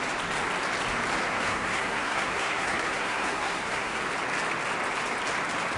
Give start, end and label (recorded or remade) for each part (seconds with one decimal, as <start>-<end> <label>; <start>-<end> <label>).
0.0-1.3 recorded; 1.3-4.0 remade; 4.0-5.8 recorded